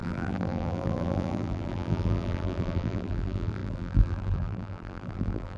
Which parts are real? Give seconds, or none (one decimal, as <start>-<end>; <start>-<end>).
none